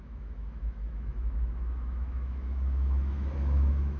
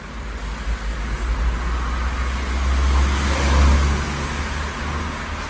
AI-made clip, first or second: first